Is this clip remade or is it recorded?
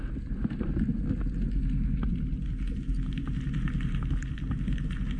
recorded